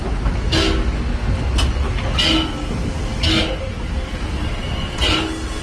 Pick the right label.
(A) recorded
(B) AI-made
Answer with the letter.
A